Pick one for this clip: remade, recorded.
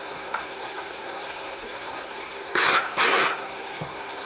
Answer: remade